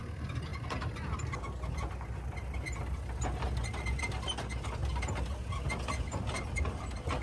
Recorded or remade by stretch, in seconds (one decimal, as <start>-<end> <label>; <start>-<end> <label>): 0.0-7.2 recorded